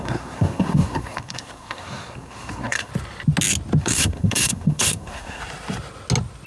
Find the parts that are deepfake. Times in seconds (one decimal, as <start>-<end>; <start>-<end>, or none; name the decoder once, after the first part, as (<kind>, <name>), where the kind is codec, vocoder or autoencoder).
0.0-2.9 (codec, SNAC); 3.8-5.4